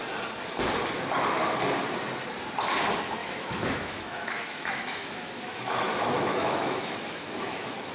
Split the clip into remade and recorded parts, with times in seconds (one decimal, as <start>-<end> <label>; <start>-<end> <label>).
0.0-3.2 recorded; 3.2-7.9 remade